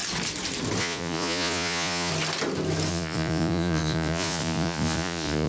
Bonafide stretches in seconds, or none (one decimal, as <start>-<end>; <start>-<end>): 0.0-0.8; 2.1-2.9